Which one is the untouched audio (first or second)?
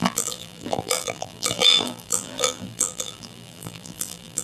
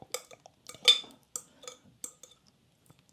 second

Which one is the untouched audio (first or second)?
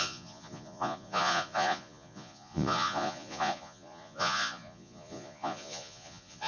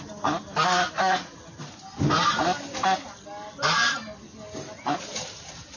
second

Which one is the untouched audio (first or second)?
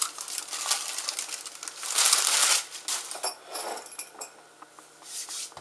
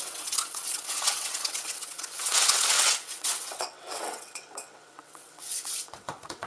first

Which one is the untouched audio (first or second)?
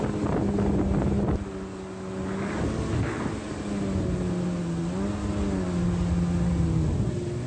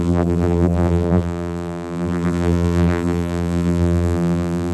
first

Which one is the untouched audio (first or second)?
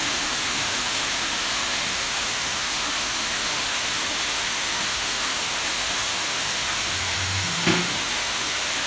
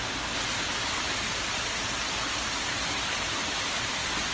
second